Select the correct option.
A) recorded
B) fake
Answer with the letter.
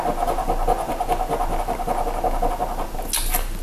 A